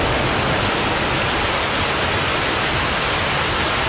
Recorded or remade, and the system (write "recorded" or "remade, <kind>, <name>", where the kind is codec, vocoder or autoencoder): recorded